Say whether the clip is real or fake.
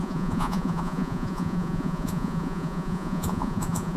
fake